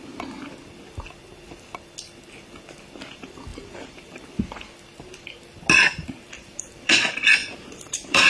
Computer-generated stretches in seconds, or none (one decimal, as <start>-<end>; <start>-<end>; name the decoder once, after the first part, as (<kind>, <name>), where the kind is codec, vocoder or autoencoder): 3.5-4.4 (vocoder, BigVGAN v2); 5.9-6.9; 7.4-8.3